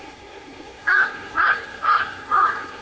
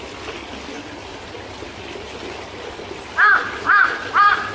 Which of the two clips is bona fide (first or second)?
second